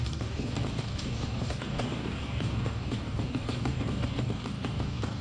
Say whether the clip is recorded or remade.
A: remade